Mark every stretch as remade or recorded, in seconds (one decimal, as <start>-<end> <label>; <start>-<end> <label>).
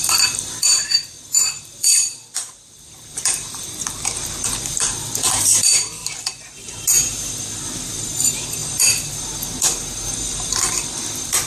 0.0-6.0 remade; 6.0-7.4 recorded; 7.4-11.5 remade